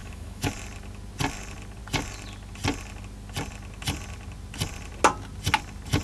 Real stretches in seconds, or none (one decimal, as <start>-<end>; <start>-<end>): 0.5-6.0